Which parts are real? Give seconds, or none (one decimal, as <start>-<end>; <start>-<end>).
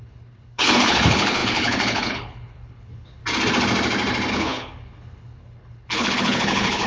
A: 3.2-4.3